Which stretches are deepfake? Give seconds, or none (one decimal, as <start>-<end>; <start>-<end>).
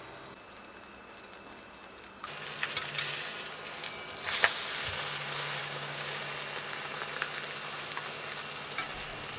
5.6-6.2